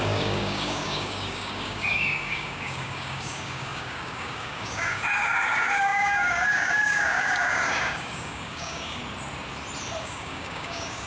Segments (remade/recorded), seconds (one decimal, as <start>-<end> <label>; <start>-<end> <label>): 0.0-9.0 remade; 9.0-10.0 recorded; 10.0-11.1 remade